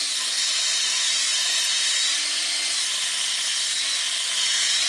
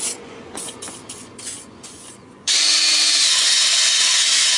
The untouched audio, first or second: first